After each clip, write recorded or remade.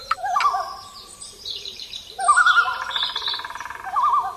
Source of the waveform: remade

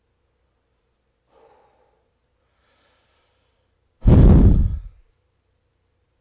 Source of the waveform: remade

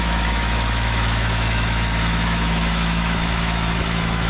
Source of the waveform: remade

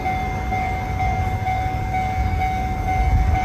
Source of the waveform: remade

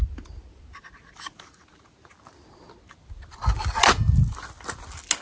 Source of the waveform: recorded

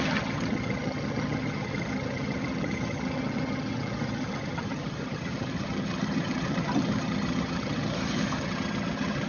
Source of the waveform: remade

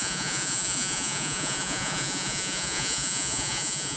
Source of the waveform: remade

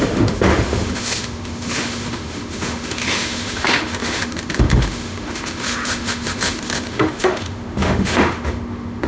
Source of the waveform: remade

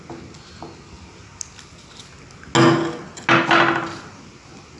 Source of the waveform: recorded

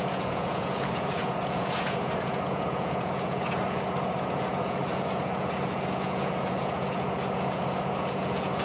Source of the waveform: remade